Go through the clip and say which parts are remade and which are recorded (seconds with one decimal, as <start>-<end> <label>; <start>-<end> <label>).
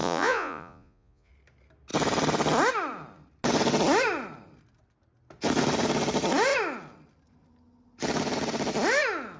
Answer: 0.0-1.3 remade; 1.3-9.4 recorded